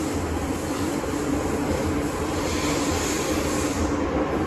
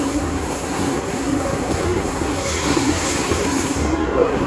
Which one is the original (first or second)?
first